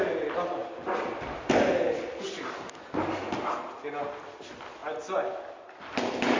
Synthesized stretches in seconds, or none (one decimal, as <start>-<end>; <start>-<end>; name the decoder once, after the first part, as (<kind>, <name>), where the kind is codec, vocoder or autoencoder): 0.6-1.7 (vocoder, BigVGAN v2)